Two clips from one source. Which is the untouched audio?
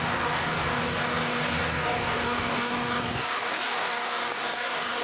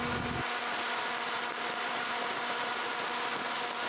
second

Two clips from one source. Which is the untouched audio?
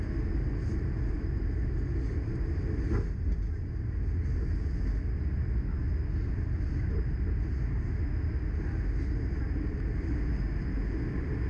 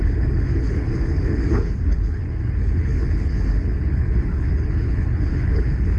first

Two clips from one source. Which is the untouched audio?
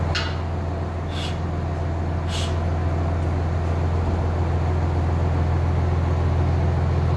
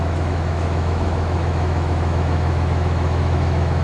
first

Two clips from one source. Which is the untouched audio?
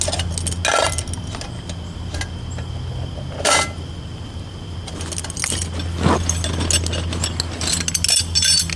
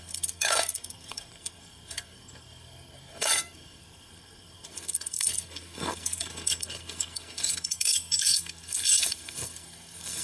first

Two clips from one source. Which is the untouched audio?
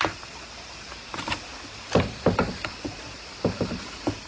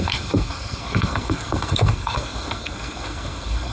first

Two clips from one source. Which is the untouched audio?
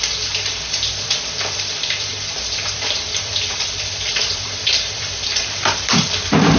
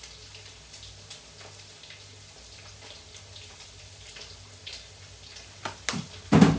second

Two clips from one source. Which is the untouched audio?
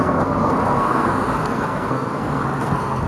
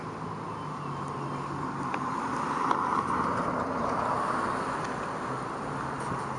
second